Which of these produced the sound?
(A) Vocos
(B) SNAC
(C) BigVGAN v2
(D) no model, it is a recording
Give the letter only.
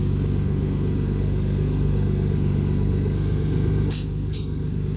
B